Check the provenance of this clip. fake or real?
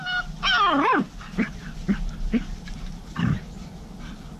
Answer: real